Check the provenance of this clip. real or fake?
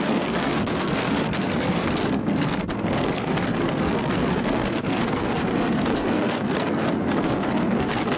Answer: fake